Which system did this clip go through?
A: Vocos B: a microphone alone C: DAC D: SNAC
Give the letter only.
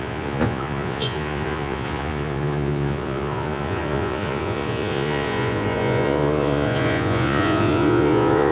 A